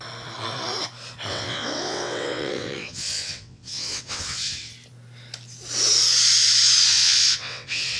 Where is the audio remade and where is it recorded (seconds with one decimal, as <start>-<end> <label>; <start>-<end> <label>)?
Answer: 0.0-1.3 recorded; 1.3-4.7 remade; 4.7-6.9 recorded; 6.9-8.0 remade